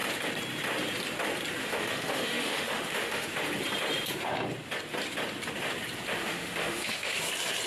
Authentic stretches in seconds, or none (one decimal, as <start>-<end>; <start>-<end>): 0.0-1.6; 3.3-6.2; 7.3-7.7